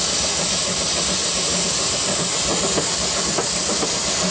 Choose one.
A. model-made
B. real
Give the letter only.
B